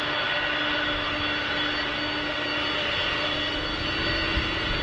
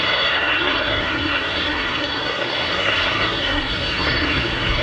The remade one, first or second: second